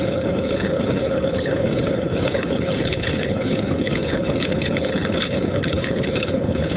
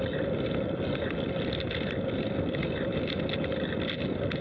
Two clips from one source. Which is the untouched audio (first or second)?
second